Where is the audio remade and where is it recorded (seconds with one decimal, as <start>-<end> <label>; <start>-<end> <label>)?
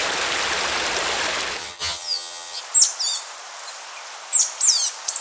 0.0-1.6 recorded; 1.6-2.6 remade; 2.6-5.2 recorded